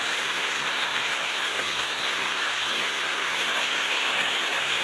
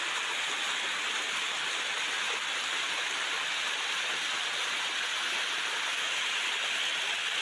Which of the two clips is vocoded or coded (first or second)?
first